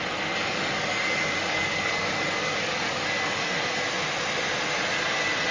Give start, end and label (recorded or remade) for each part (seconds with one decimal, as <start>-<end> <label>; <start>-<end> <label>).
0.0-0.5 recorded; 0.5-3.8 remade; 3.8-5.5 recorded